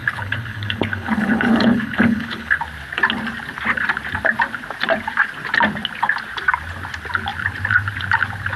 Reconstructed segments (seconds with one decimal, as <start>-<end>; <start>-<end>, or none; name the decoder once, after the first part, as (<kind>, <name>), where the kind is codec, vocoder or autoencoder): 0.0-2.6 (codec, HILCodec)